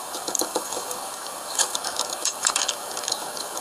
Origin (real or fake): fake